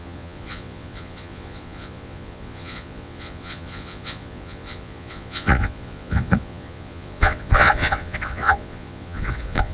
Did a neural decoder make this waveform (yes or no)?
yes